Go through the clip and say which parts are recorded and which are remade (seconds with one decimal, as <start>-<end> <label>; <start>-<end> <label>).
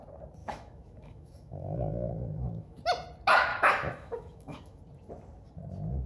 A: 0.0-0.4 recorded; 0.4-2.8 remade; 2.8-3.5 recorded; 3.5-4.8 remade; 4.8-6.1 recorded